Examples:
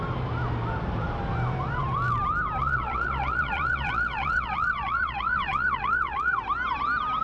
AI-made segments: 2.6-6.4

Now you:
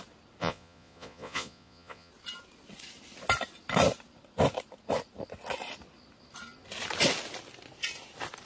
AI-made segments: 0.4-2.1

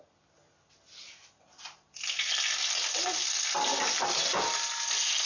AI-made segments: none

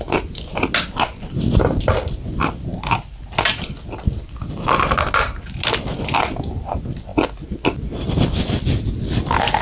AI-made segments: none

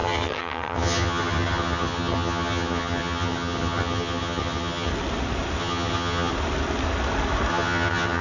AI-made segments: 0.0-4.9; 5.6-6.3; 7.5-8.2

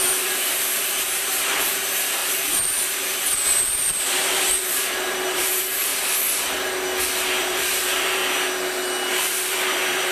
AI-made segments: 0.0-5.9; 7.4-8.2; 9.1-10.1